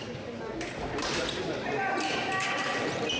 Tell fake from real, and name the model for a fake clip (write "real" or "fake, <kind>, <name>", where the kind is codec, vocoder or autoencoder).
real